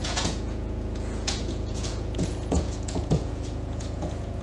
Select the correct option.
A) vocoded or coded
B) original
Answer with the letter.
A